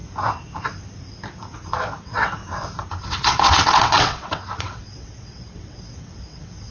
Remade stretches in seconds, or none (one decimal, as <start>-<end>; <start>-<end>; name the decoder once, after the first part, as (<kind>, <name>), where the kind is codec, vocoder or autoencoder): 2.0-2.4 (vocoder, WaveNeXt); 3.0-6.7

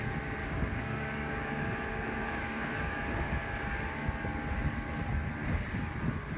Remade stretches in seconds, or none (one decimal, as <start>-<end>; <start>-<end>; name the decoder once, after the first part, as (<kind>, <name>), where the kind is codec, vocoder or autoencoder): 0.4-1.5 (codec, DAC); 1.9-3.0

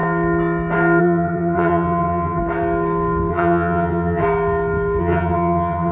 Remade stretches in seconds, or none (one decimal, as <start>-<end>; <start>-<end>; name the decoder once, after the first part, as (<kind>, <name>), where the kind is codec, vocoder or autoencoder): 1.0-2.4 (vocoder, HiFi-GAN); 3.3-4.2; 5.0-5.9